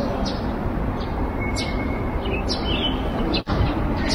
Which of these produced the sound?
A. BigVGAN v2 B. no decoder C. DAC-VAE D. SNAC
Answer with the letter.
B